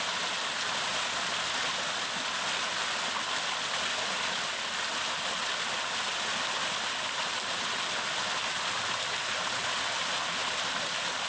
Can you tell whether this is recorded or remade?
recorded